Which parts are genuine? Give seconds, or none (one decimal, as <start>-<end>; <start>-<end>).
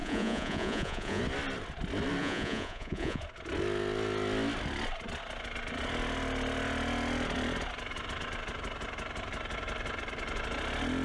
1.2-2.2; 3.2-11.0